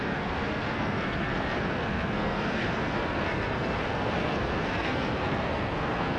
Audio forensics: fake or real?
fake